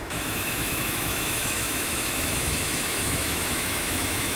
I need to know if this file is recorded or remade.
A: remade